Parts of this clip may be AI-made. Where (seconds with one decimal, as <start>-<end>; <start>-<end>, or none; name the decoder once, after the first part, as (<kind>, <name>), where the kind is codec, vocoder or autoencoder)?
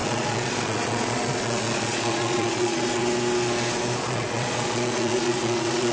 0.0-3.0 (vocoder, Vocos); 4.0-5.9